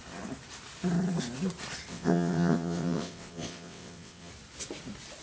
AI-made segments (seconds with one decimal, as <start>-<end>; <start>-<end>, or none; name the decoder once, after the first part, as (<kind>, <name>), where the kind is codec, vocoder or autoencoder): 1.9-4.3 (vocoder, WaveNeXt)